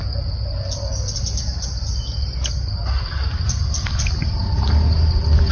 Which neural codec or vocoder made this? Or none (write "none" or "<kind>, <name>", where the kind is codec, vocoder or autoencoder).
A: none